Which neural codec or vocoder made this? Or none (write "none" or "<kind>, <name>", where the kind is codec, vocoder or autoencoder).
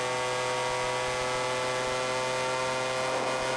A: none